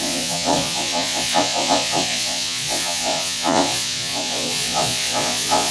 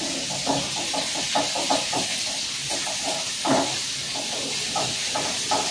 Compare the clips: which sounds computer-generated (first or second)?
first